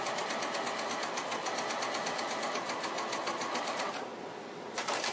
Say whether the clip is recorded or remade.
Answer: recorded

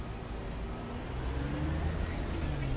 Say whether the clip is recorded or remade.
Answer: recorded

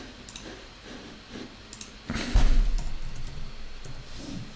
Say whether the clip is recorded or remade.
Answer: recorded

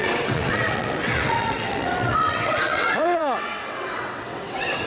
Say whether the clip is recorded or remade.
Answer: remade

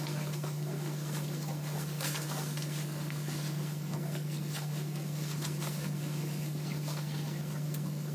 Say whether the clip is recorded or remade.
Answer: remade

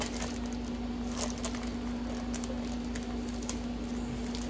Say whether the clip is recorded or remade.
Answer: recorded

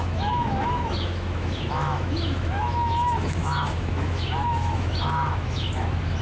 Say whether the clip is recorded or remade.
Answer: remade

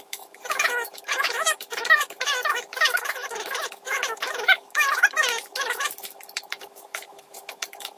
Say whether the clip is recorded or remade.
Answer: remade